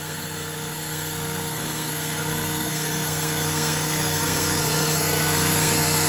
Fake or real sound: fake